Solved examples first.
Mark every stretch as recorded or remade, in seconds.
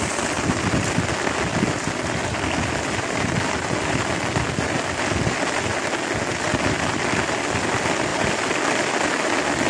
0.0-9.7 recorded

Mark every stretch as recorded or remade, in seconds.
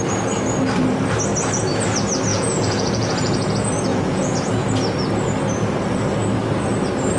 0.0-2.3 recorded; 2.3-3.5 remade; 3.5-3.9 recorded; 3.9-4.5 remade; 4.5-7.2 recorded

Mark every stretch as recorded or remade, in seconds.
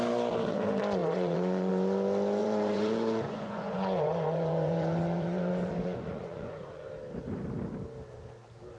0.0-1.0 recorded; 1.0-1.7 remade; 1.7-2.4 recorded; 2.4-6.9 remade; 6.9-8.8 recorded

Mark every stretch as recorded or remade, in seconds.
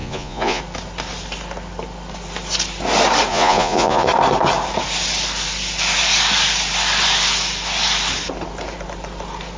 0.0-0.6 remade; 0.6-3.3 recorded; 3.3-4.1 remade; 4.1-9.6 recorded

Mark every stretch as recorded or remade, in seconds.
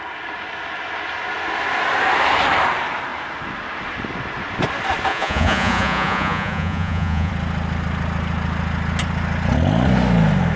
0.0-5.1 recorded; 5.1-7.3 remade; 7.3-10.6 recorded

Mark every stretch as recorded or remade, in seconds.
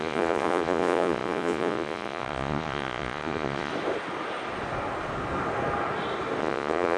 0.0-3.7 remade; 3.7-6.4 recorded; 6.4-7.0 remade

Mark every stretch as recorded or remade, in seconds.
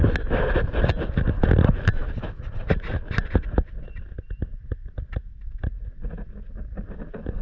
0.0-7.4 recorded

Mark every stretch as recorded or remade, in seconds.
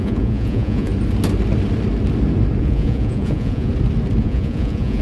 0.0-0.9 remade; 0.9-2.6 recorded; 2.6-3.7 remade; 3.7-4.2 recorded; 4.2-5.0 remade